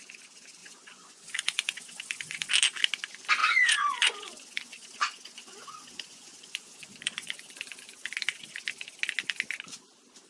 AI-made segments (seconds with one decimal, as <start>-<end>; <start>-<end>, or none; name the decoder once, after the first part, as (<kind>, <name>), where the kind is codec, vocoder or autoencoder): 0.6-2.5 (vocoder, Vocos); 3.4-7.5